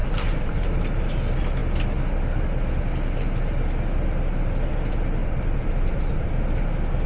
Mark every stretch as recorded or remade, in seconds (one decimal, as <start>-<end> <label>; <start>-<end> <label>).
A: 0.0-0.7 remade; 0.7-5.2 recorded; 5.2-6.3 remade; 6.3-7.1 recorded